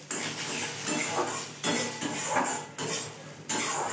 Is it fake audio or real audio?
real